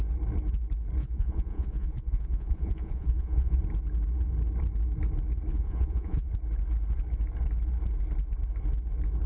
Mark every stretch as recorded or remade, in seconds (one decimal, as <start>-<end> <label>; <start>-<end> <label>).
0.0-1.0 recorded; 1.0-3.6 remade; 3.6-5.5 recorded; 5.5-6.3 remade; 6.3-9.3 recorded